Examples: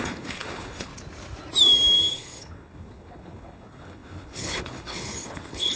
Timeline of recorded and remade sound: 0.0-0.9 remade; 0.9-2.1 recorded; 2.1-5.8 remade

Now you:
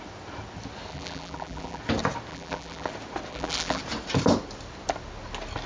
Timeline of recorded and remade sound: 0.0-0.9 recorded; 0.9-1.8 remade; 1.8-2.3 recorded; 2.3-2.9 remade; 2.9-3.3 recorded; 3.3-3.8 remade; 3.8-5.7 recorded

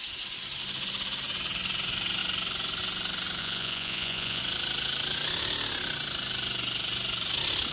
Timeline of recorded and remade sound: 0.0-3.4 recorded; 3.4-4.4 remade; 4.4-7.7 recorded

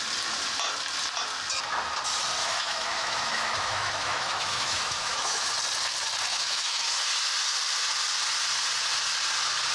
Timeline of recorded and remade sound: 0.0-2.4 recorded; 2.4-5.5 remade; 5.5-6.3 recorded; 6.3-6.9 remade; 6.9-9.7 recorded